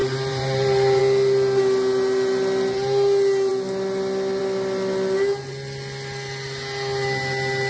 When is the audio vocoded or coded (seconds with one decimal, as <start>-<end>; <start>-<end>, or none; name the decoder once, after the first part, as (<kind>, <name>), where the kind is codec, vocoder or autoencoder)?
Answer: 0.0-1.0 (vocoder, BigVGAN v2)